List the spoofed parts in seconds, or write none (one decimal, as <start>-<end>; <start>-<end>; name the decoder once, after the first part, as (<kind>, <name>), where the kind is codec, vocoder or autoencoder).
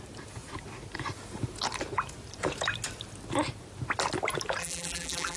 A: 4.6-5.4 (vocoder, BigVGAN v2)